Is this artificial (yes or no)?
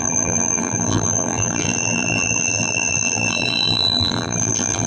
yes